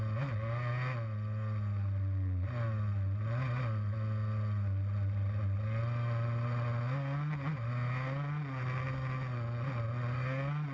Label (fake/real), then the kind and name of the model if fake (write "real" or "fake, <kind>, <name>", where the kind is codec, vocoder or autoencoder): real